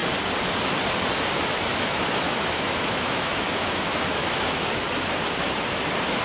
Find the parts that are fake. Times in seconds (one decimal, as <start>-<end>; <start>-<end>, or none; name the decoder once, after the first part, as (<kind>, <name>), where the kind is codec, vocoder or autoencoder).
1.7-4.7 (autoencoder, DAC-VAE)